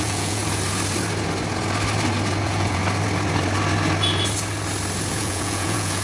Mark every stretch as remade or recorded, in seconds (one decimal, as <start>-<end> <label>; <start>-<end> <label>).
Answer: 0.0-0.4 remade; 0.4-2.4 recorded; 2.4-2.8 remade; 2.8-5.1 recorded; 5.1-6.0 remade

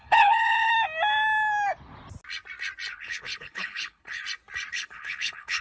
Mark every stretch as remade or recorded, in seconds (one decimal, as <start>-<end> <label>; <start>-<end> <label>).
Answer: 0.0-0.7 remade; 0.7-2.9 recorded; 2.9-4.2 remade; 4.2-4.7 recorded; 4.7-5.6 remade

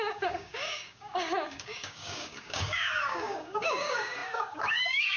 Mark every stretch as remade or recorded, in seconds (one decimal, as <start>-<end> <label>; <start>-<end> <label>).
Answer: 0.0-5.2 remade

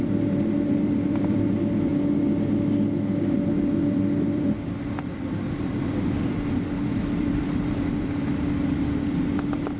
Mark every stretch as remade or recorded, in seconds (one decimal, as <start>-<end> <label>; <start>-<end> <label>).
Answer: 0.0-1.9 remade; 1.9-3.2 recorded; 3.2-9.8 remade

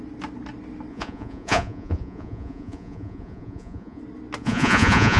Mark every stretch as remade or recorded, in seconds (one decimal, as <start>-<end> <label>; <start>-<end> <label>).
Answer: 0.0-0.9 recorded; 0.9-4.0 remade; 4.0-4.4 recorded; 4.4-5.2 remade

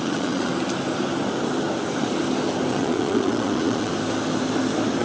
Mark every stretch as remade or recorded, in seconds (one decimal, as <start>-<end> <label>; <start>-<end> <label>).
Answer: 0.0-0.5 remade; 0.5-2.7 recorded; 2.7-3.9 remade; 3.9-5.0 recorded